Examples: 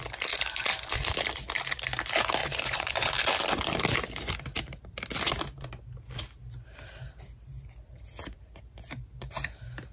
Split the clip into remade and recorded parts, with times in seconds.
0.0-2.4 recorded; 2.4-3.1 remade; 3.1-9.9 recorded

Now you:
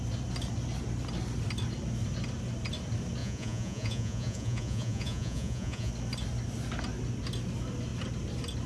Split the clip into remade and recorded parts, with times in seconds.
0.0-3.2 recorded; 3.2-5.9 remade; 5.9-8.7 recorded